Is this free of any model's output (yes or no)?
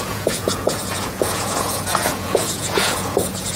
no